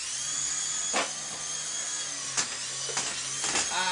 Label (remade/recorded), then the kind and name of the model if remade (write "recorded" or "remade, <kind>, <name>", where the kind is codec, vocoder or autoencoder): recorded